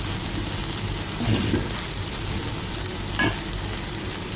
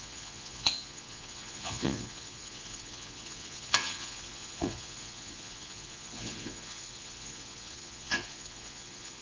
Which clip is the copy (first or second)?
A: second